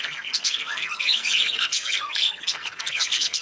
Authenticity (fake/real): fake